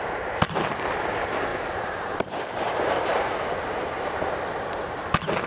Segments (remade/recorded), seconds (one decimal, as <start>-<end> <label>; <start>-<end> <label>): 0.0-1.5 recorded; 1.5-4.3 remade; 4.3-5.5 recorded